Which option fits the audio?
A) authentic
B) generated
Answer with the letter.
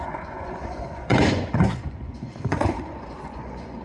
B